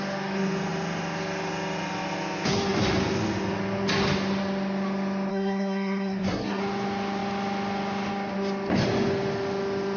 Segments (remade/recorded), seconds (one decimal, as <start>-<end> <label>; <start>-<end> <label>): 0.0-5.3 recorded; 5.3-6.6 remade; 6.6-10.0 recorded